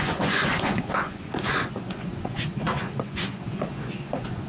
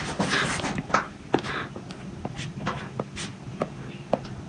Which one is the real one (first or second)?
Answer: second